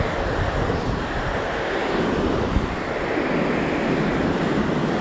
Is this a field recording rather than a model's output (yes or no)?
yes